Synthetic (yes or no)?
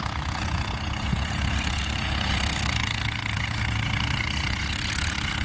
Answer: yes